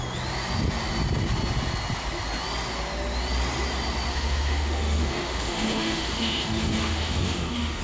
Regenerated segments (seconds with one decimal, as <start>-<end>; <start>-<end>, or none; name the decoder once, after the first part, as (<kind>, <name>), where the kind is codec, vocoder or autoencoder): 4.1-7.8 (autoencoder, DAC-VAE)